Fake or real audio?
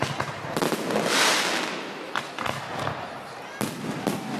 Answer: real